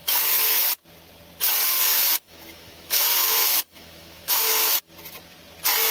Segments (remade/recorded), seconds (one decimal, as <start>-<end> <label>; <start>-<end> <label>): 0.0-0.7 remade; 0.7-1.9 recorded; 1.9-4.8 remade; 4.8-5.9 recorded

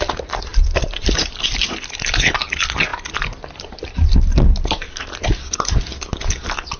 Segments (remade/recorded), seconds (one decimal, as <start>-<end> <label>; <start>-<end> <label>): 0.0-6.8 recorded